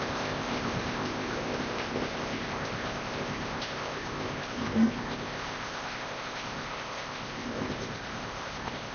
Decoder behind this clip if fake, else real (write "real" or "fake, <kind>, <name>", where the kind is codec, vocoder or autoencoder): fake, codec, ZipCodec